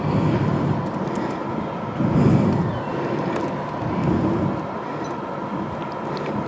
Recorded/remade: recorded